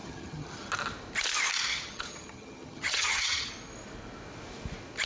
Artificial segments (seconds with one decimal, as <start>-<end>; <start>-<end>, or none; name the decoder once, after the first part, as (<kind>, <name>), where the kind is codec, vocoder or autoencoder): 0.0-0.7 (vocoder, HiFi-GAN); 1.7-3.5